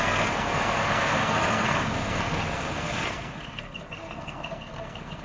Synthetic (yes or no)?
yes